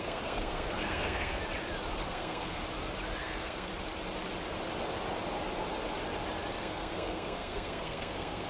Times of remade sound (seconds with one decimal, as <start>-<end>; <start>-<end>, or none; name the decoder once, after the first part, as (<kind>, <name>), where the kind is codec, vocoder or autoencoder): 0.0-1.4 (codec, SNAC); 2.1-2.6; 3.2-3.7; 6.6-8.5